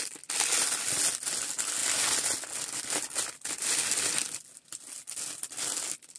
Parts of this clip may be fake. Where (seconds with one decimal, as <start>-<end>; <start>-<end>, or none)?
none